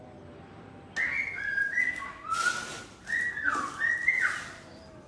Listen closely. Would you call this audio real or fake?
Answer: real